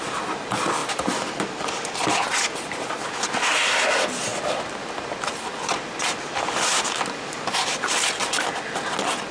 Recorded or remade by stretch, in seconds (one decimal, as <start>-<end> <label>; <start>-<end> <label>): 0.0-9.3 recorded